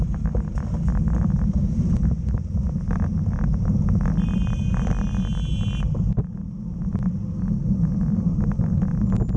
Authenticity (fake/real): real